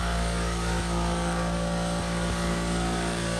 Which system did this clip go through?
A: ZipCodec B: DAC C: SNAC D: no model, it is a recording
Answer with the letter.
B